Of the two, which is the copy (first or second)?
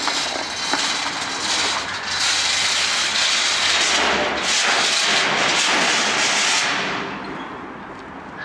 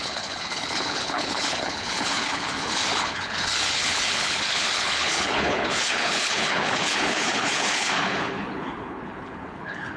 second